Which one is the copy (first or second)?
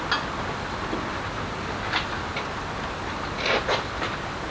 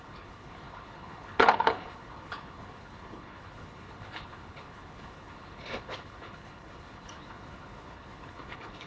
second